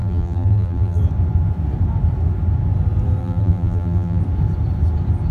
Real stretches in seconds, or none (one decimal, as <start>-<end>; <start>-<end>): 1.0-3.2; 4.2-5.3